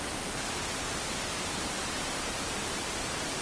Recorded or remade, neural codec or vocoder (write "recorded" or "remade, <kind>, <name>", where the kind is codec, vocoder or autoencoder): recorded